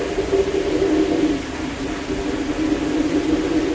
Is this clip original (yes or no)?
yes